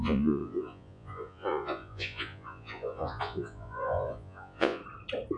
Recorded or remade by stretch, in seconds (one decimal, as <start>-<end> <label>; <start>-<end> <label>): 0.0-4.8 remade; 4.8-5.4 recorded